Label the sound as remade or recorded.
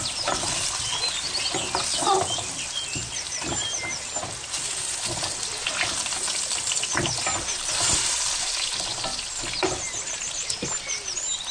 recorded